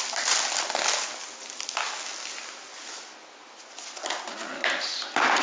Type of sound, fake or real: real